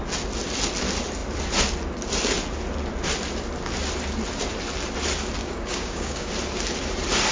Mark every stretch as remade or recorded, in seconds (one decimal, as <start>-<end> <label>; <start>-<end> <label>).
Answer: 0.0-5.4 recorded; 5.4-6.3 remade; 6.3-7.3 recorded